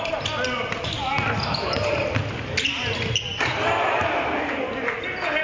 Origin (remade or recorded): recorded